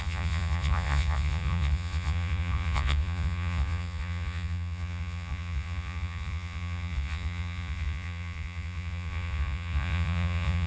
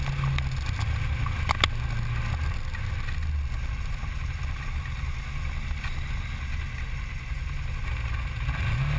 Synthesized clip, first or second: first